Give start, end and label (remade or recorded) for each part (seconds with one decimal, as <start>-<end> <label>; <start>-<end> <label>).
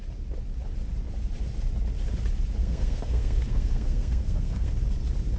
0.0-2.6 recorded; 2.6-4.7 remade; 4.7-5.4 recorded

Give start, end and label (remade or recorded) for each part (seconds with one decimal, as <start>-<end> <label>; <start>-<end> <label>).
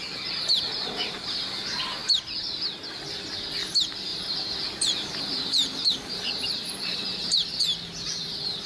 0.0-4.1 recorded; 4.1-7.6 remade; 7.6-8.7 recorded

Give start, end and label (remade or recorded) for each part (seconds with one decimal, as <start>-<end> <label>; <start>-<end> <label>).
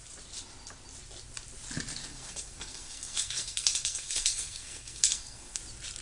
0.0-2.0 recorded; 2.0-5.6 remade; 5.6-6.0 recorded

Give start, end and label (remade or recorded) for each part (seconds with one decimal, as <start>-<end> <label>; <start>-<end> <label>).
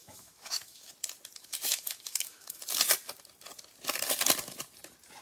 0.0-0.9 remade; 0.9-1.4 recorded; 1.4-2.6 remade; 2.6-5.2 recorded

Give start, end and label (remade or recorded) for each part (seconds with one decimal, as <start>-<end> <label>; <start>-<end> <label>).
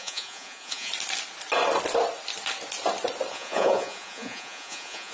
0.0-0.9 remade; 0.9-3.3 recorded; 3.3-5.1 remade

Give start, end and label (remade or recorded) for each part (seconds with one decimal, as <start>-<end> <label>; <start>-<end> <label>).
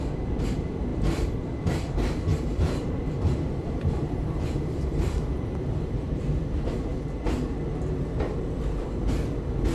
0.0-0.9 recorded; 0.9-1.9 remade; 1.9-2.3 recorded; 2.3-6.2 remade; 6.2-9.7 recorded